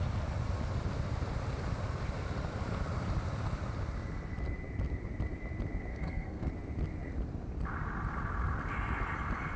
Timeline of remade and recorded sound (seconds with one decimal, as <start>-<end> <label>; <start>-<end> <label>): 0.0-5.9 recorded; 5.9-6.5 remade; 6.5-9.6 recorded